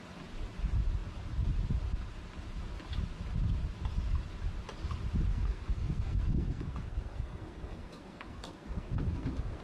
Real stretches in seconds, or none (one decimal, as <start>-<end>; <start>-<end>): 0.0-5.3